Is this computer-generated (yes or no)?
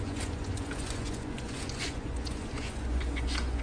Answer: yes